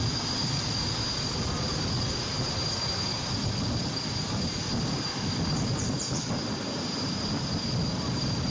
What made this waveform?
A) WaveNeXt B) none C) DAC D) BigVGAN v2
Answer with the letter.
B